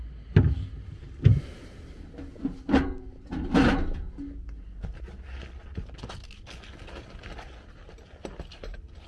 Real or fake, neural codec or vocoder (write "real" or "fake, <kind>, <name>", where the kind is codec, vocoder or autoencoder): real